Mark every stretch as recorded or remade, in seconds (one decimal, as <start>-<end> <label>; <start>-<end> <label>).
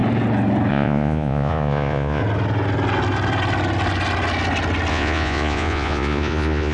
0.0-0.7 recorded; 0.7-2.2 remade; 2.2-4.9 recorded; 4.9-6.7 remade